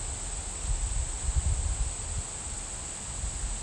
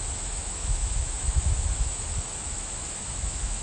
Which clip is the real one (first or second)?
first